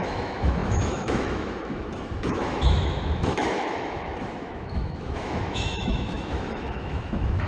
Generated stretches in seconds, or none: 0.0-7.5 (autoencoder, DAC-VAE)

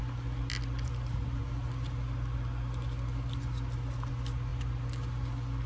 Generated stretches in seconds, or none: none

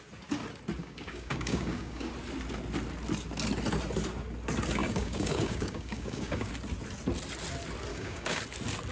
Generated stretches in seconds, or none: 0.8-2.1 (codec, DAC); 4.8-6.5; 7.9-8.4